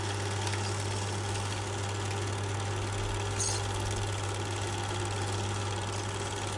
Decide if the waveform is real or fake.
real